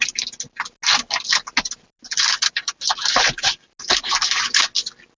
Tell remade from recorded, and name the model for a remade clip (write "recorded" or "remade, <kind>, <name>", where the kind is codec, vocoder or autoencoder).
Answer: recorded